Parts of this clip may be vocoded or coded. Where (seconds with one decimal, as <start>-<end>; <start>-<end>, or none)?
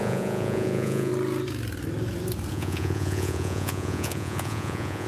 0.0-1.1; 2.5-5.1